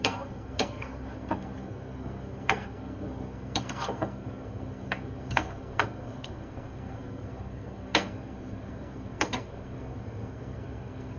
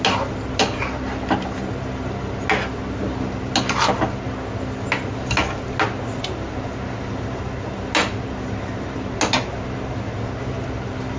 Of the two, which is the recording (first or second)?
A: second